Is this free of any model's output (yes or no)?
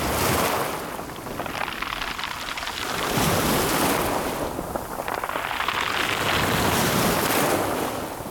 yes